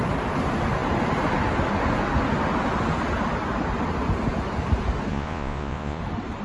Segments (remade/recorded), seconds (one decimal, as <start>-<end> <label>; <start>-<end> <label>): 0.0-5.1 recorded; 5.1-6.0 remade; 6.0-6.4 recorded